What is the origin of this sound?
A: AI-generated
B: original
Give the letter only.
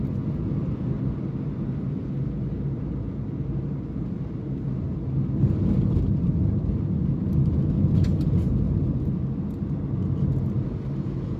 B